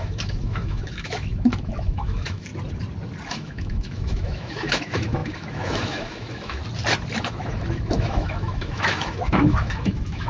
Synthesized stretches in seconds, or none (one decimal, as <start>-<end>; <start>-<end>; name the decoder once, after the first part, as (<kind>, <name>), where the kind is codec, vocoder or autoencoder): 0.0-2.5 (autoencoder, DAC-VAE); 3.3-6.6; 7.2-10.3